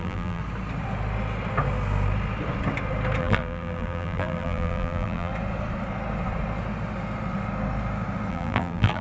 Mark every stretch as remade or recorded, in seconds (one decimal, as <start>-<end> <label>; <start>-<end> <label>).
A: 0.0-0.4 remade; 0.4-3.2 recorded; 3.2-5.3 remade; 5.3-8.3 recorded; 8.3-9.0 remade